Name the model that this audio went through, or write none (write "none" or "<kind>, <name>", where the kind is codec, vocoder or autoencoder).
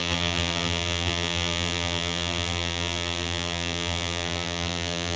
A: vocoder, BigVGAN v2